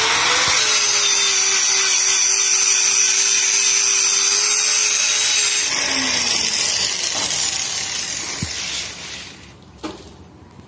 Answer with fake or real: real